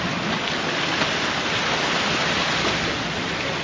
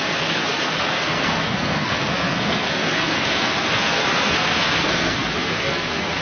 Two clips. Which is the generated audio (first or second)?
second